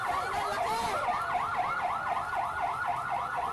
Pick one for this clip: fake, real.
real